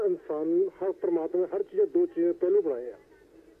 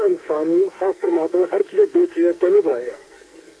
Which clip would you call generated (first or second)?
second